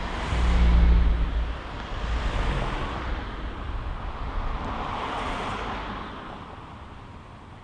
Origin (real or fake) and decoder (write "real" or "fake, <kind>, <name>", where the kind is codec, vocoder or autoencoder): real